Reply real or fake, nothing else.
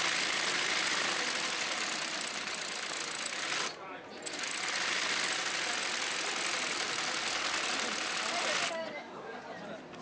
real